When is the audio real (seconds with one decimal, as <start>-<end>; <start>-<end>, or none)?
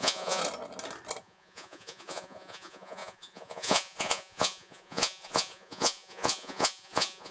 0.4-1.2